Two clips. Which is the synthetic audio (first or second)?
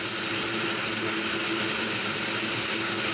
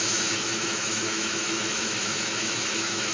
second